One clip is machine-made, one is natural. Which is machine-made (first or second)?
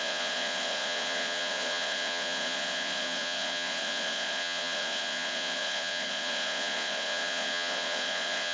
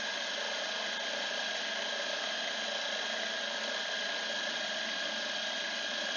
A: first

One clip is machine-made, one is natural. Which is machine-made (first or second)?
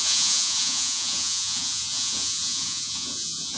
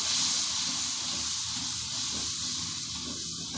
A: first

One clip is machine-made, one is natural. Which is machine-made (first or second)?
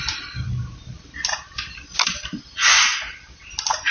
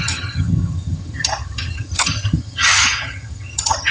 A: second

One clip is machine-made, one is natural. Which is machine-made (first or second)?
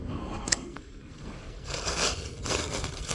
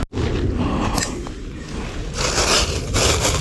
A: first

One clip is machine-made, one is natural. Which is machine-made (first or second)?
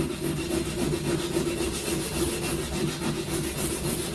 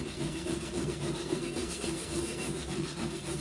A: second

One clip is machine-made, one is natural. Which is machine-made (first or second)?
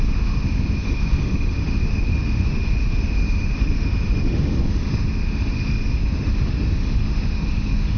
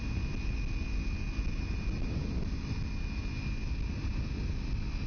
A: first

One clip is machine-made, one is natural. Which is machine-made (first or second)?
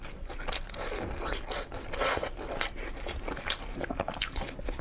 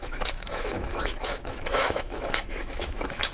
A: second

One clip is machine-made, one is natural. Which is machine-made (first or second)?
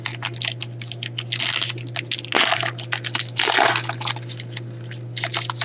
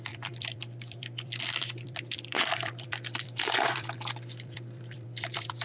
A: second